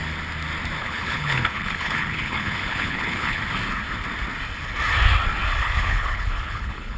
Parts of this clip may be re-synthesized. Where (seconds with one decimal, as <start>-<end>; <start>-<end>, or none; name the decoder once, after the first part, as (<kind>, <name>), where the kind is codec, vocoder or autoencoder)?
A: 0.8-3.4 (codec, HILCodec); 5.6-7.0

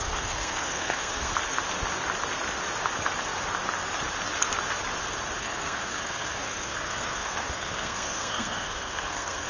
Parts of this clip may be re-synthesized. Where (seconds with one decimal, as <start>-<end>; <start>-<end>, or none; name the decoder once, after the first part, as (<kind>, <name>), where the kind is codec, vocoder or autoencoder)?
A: 0.0-1.3 (codec, SNAC); 5.4-9.5

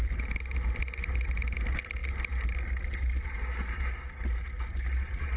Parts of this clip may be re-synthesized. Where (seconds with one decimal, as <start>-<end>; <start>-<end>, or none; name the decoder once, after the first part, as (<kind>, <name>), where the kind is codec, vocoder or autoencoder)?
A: none

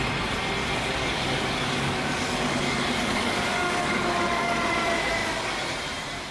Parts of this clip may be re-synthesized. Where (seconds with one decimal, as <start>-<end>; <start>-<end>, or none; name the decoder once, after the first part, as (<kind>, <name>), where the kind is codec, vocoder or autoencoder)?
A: 0.7-4.5 (codec, DAC)

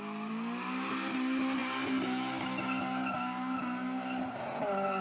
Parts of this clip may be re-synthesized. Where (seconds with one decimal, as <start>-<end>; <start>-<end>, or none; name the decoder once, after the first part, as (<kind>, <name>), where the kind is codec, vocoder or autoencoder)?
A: none

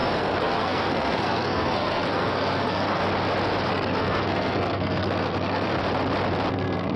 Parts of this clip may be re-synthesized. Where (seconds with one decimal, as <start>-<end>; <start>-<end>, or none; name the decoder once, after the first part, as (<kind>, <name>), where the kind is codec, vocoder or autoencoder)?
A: 0.0-3.0 (codec, SNAC); 3.7-5.8; 6.5-7.0

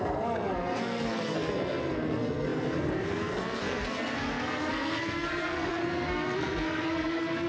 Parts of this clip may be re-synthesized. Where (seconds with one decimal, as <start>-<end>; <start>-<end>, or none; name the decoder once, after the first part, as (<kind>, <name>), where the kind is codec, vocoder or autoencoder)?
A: 0.0-7.5 (codec, SNAC)